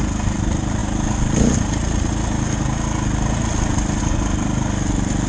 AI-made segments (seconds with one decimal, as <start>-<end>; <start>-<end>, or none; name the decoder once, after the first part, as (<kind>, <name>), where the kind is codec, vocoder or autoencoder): none